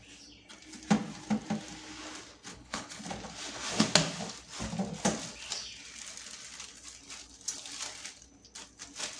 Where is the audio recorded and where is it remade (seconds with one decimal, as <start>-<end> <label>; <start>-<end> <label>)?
0.0-2.5 recorded; 2.5-3.0 remade; 3.0-9.2 recorded